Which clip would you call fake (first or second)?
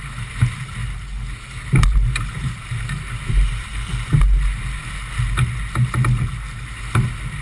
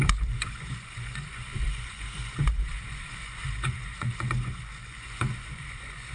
second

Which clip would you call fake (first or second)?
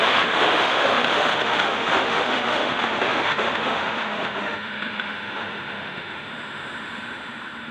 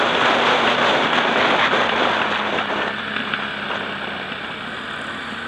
first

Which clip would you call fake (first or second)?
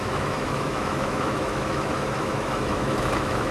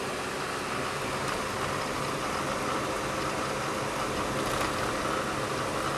first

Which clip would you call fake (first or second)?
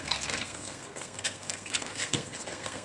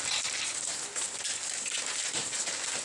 first